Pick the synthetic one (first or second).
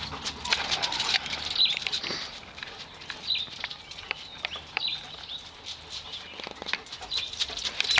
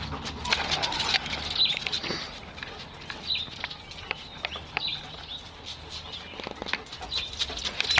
first